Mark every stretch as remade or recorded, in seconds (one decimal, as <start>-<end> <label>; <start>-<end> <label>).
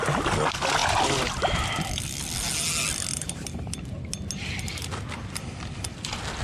0.0-6.4 recorded